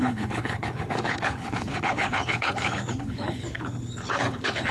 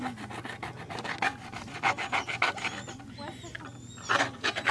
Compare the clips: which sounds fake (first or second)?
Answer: first